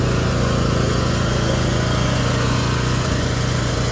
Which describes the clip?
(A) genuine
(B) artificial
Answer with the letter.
B